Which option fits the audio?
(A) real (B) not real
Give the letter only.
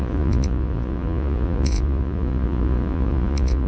B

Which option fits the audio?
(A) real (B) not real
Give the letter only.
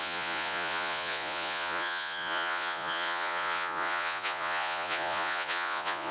B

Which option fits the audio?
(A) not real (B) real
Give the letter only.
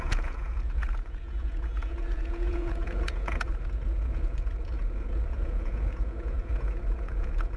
A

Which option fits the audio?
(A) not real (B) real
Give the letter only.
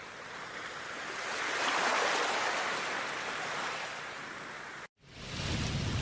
B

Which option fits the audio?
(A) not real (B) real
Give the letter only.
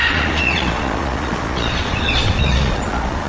A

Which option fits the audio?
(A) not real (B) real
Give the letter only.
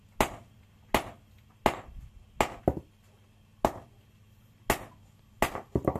B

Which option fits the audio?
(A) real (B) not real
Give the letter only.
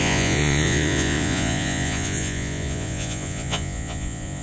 B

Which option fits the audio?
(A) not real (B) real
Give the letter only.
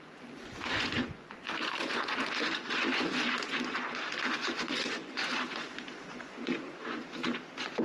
A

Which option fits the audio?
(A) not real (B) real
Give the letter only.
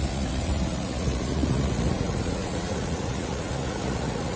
A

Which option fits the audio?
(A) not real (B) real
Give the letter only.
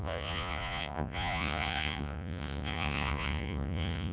A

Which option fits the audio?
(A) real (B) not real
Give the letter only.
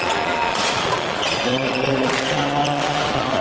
B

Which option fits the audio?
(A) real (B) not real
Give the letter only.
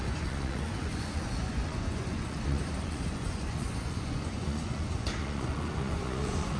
B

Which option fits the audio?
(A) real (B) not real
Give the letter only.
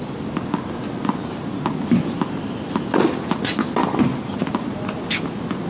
A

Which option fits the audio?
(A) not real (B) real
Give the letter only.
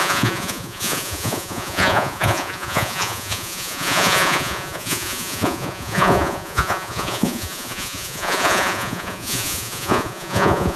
A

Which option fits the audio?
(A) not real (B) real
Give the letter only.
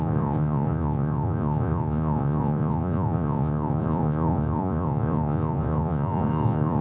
A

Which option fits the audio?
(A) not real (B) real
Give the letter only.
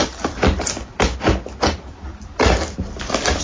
B